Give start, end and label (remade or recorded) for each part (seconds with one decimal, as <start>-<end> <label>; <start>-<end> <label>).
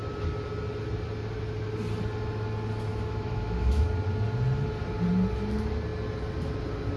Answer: 0.0-2.9 recorded; 2.9-3.9 remade; 3.9-7.0 recorded